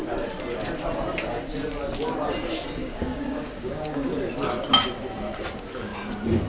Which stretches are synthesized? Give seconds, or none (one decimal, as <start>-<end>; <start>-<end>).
2.8-4.1